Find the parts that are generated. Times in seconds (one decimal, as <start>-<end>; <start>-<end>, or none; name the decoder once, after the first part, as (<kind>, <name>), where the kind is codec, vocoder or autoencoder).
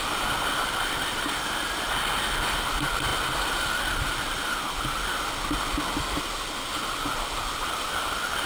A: 1.0-1.5 (vocoder, BigVGAN v2)